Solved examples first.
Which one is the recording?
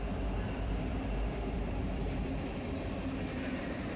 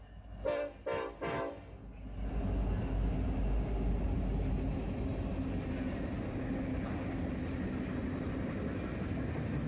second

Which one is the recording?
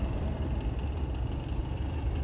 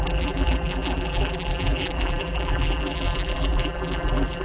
first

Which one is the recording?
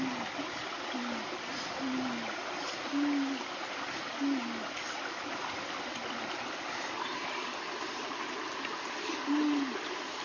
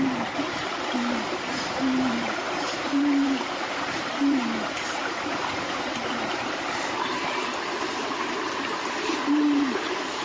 first